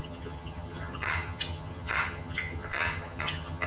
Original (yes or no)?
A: no